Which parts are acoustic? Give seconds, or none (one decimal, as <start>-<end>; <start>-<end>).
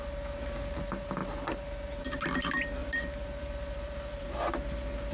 0.0-2.8; 4.5-5.1